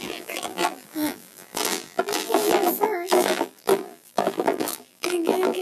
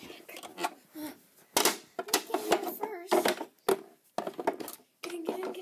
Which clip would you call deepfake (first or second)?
first